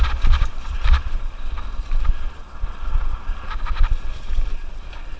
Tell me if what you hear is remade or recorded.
remade